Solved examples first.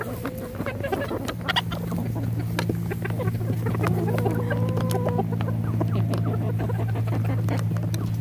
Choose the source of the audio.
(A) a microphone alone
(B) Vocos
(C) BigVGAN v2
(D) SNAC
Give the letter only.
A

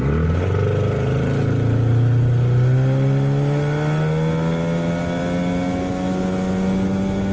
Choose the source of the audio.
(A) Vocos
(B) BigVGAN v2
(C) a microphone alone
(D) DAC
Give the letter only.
C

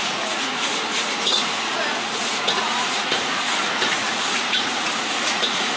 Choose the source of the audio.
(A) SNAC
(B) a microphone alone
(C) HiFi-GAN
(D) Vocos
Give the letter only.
D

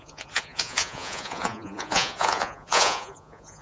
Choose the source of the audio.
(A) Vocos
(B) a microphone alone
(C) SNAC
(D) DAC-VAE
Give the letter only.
A